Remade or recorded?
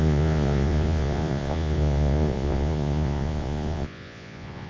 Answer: remade